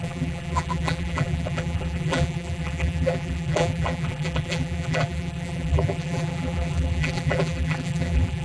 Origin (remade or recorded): remade